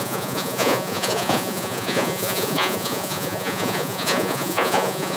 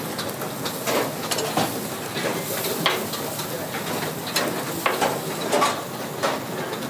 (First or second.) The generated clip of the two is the first